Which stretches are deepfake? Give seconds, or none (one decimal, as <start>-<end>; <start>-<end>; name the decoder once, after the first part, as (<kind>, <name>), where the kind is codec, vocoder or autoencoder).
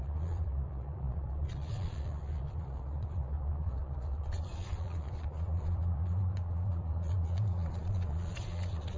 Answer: 0.0-9.0 (vocoder, Vocos)